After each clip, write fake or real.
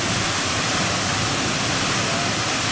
real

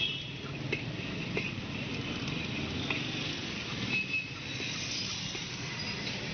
real